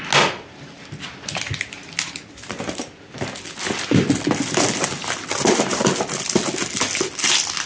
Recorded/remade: recorded